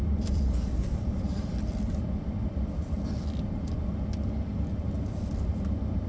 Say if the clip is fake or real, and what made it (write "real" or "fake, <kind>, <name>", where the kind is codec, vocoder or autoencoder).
fake, vocoder, BigVGAN v2